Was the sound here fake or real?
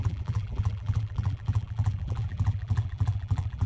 fake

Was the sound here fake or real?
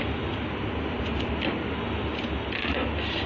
real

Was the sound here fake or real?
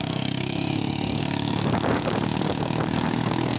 fake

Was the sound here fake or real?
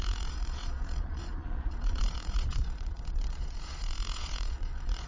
fake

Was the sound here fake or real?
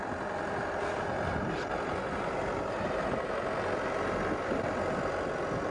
real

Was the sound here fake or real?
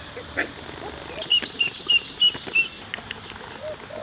real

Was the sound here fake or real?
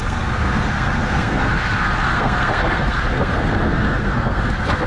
fake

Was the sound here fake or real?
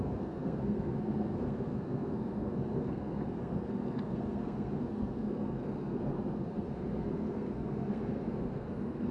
fake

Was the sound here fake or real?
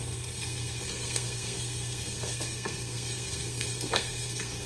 fake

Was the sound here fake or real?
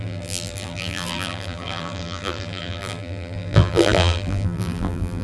fake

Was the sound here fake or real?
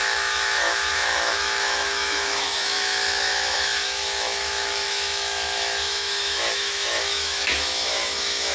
fake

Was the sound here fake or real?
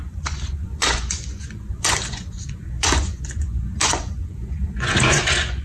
fake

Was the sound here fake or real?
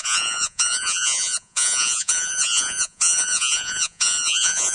fake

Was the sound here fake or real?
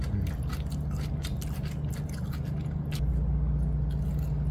real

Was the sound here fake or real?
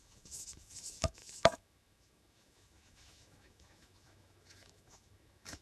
fake